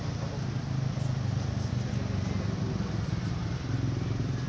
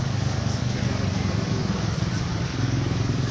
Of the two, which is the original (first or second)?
first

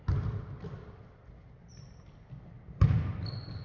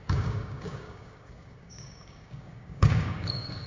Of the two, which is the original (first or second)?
first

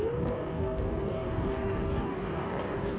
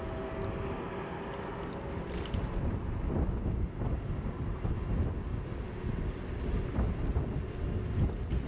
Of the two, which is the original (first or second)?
second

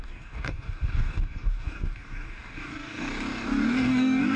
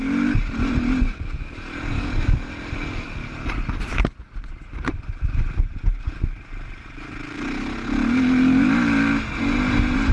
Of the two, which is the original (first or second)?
second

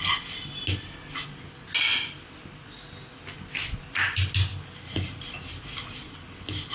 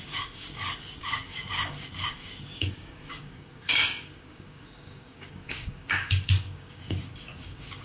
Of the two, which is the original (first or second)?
first